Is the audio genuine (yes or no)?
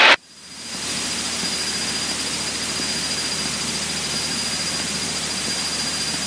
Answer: yes